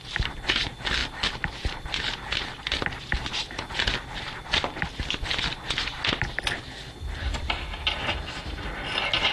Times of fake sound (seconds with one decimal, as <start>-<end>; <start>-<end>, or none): none